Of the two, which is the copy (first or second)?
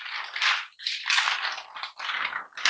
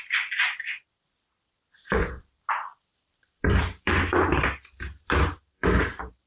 second